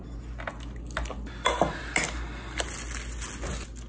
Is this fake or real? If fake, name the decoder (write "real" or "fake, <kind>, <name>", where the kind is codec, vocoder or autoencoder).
real